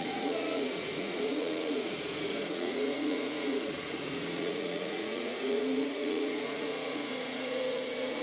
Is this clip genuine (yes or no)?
no